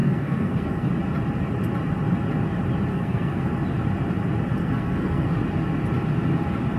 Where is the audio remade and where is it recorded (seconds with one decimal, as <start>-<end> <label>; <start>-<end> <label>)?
0.0-0.9 remade; 0.9-2.9 recorded; 2.9-3.5 remade; 3.5-4.6 recorded; 4.6-5.4 remade; 5.4-6.8 recorded